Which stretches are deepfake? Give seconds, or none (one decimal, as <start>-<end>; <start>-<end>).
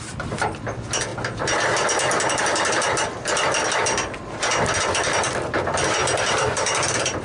0.0-1.1; 4.8-7.2